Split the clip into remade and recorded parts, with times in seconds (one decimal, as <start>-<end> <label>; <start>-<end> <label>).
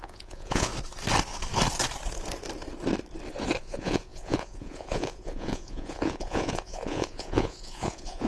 0.0-0.7 remade; 0.7-3.6 recorded; 3.6-8.3 remade